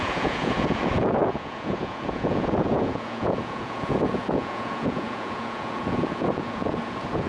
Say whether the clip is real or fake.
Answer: fake